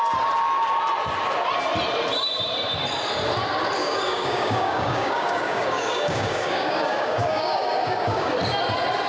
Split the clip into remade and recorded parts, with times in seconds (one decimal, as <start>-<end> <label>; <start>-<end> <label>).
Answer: 0.0-3.8 recorded; 3.8-8.3 remade; 8.3-9.1 recorded